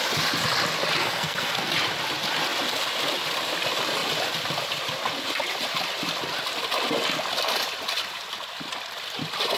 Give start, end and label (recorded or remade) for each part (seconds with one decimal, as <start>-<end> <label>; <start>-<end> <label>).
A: 0.0-1.0 recorded; 1.0-1.7 remade; 1.7-9.6 recorded